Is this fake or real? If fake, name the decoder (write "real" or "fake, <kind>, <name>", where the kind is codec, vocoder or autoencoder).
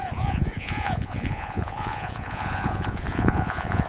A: fake, vocoder, Vocos